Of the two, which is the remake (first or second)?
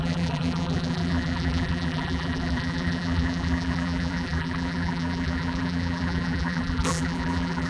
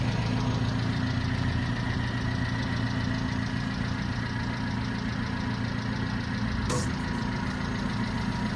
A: first